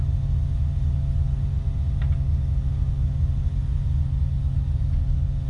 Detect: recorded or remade recorded